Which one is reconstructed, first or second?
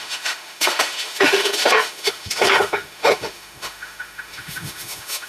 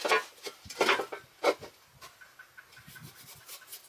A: first